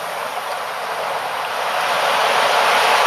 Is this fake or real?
real